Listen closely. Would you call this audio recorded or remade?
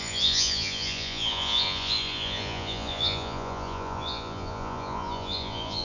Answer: remade